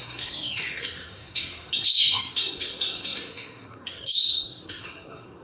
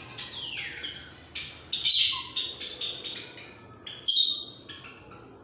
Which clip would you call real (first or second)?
second